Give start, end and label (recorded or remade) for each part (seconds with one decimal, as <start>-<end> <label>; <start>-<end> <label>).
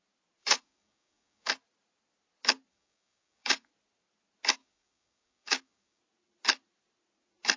0.0-0.4 recorded; 0.4-1.5 remade; 1.5-2.7 recorded; 2.7-3.7 remade; 3.7-4.6 recorded; 4.6-6.0 remade; 6.0-7.6 recorded